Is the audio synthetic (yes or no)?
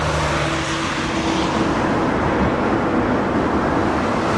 no